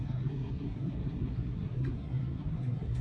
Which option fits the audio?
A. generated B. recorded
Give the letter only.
A